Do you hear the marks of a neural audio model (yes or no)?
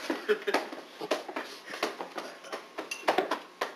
no